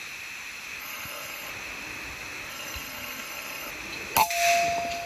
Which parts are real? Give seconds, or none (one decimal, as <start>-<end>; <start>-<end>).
0.0-0.8; 1.5-2.5; 3.7-5.1